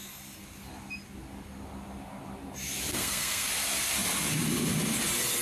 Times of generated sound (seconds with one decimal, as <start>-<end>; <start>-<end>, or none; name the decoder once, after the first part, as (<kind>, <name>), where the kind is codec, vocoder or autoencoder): 2.9-3.5 (codec, SNAC)